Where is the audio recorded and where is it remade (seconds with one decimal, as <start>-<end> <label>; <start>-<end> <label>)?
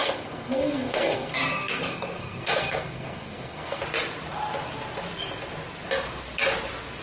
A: 0.0-3.8 remade; 3.8-7.0 recorded